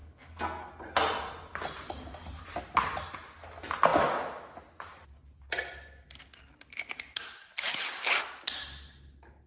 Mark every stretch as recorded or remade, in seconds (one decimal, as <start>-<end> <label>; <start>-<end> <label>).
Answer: 0.0-0.7 remade; 0.7-9.5 recorded